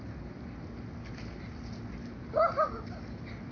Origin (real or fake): real